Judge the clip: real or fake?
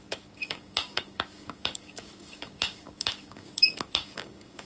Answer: fake